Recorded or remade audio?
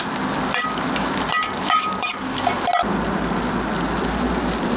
recorded